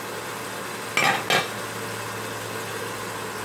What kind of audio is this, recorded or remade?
recorded